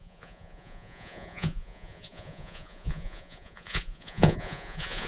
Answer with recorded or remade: remade